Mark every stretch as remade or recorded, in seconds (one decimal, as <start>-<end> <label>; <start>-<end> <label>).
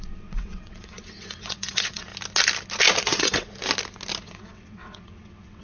0.0-2.1 remade; 2.1-3.0 recorded; 3.0-3.5 remade; 3.5-4.2 recorded; 4.2-5.6 remade